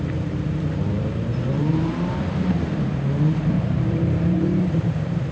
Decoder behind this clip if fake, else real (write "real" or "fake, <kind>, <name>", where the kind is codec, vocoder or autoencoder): fake, vocoder, BigVGAN v2